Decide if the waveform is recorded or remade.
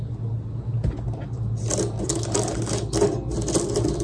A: recorded